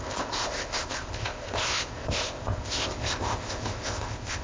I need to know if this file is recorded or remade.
remade